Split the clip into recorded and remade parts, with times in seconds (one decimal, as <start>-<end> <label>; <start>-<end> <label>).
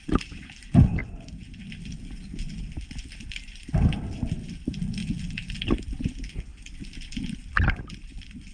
0.0-8.5 recorded